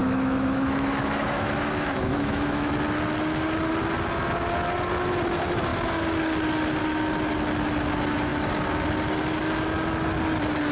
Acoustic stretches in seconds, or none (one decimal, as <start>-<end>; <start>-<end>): 2.7-10.7